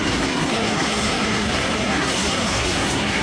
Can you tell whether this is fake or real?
fake